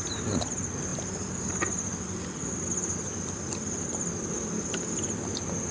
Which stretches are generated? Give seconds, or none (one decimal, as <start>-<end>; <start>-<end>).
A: none